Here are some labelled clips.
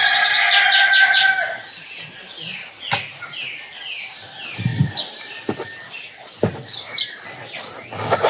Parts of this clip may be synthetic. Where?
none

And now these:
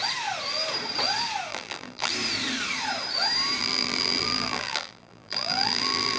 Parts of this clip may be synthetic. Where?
1.5-2.1 (vocoder, BigVGAN v2); 3.6-6.2

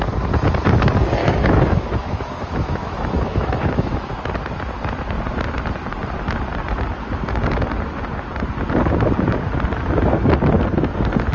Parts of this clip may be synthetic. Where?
1.2-4.1 (autoencoder, DAC-VAE)

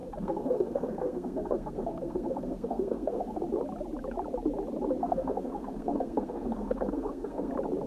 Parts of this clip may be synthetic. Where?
0.0-3.4 (codec, SNAC); 5.0-7.5

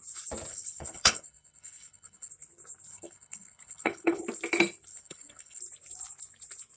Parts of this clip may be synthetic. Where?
0.5-2.3 (codec, HILCodec); 2.9-4.2; 4.9-5.6

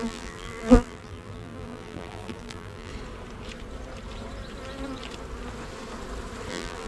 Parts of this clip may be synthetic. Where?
0.0-2.9 (vocoder, BigVGAN v2); 6.5-6.9

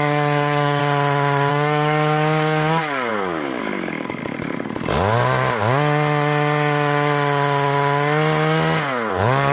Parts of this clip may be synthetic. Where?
0.0-0.8 (codec, DAC); 1.5-4.2; 9.1-9.5

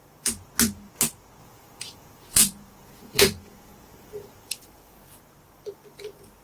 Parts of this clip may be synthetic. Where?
1.4-5.2 (vocoder, Vocos)